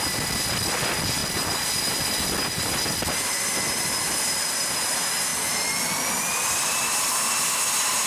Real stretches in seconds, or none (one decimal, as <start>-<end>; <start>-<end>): 0.0-8.1